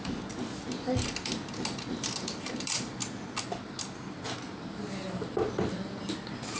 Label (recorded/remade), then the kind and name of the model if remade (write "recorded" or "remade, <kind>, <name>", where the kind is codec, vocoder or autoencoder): recorded